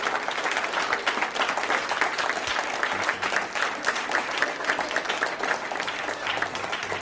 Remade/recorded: recorded